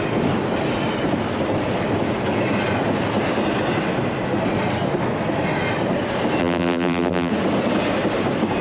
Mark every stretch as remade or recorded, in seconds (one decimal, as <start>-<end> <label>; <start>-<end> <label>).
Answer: 0.0-6.4 recorded; 6.4-7.3 remade; 7.3-8.6 recorded